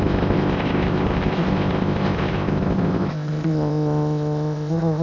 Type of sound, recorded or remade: remade